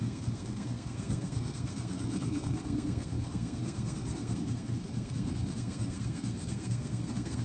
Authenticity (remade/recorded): remade